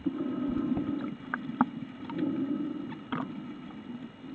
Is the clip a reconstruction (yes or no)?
no